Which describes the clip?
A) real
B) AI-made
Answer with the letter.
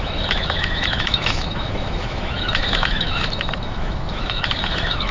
B